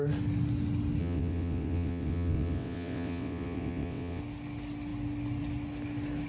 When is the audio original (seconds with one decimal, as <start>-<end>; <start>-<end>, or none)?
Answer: 0.0-1.0; 4.2-6.3